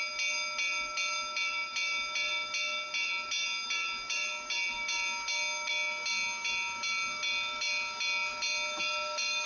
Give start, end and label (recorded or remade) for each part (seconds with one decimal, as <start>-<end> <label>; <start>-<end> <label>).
0.0-9.5 recorded